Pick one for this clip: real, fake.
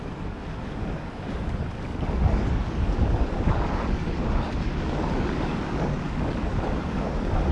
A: fake